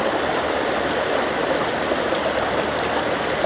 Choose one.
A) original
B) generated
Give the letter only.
A